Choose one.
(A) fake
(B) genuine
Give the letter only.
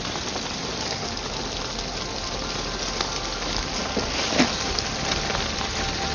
B